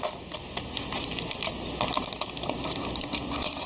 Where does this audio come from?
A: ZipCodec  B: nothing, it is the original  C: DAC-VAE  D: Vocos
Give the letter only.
B